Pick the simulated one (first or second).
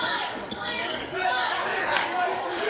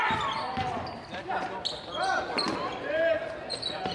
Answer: first